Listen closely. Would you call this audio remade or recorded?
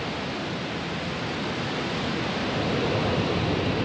recorded